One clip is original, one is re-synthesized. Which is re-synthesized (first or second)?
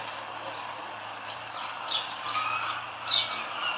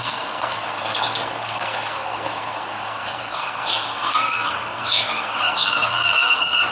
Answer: second